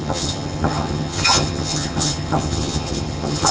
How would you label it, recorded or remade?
remade